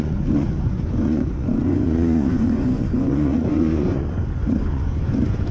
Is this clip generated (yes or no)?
yes